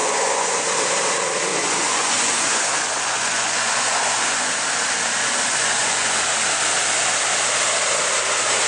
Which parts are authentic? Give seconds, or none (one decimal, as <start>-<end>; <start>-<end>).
0.6-1.5; 4.5-5.2; 6.2-8.7